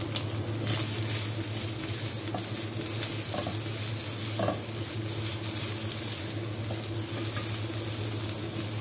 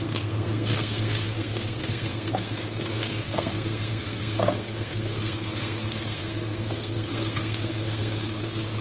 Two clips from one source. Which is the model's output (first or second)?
second